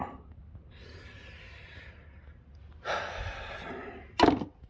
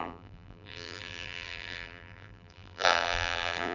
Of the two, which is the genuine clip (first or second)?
first